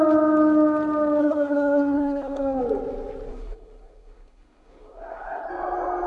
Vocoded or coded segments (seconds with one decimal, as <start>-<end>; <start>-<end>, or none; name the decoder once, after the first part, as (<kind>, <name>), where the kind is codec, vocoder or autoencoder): 1.2-2.6 (codec, SNAC); 3.3-5.5